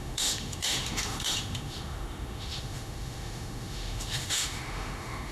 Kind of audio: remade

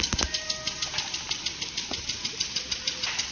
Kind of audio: recorded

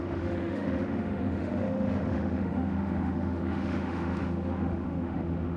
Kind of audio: remade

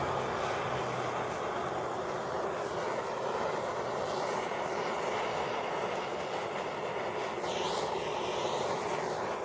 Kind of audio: recorded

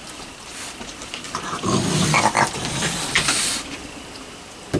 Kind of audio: remade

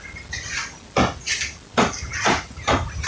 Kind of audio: recorded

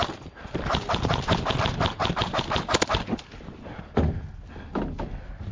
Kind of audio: recorded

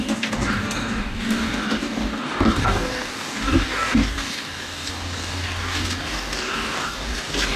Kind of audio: remade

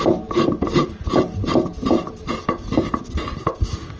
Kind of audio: recorded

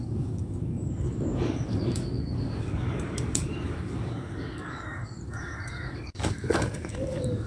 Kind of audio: remade